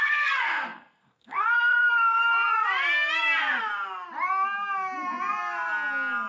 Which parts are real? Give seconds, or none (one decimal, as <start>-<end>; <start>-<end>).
2.3-6.3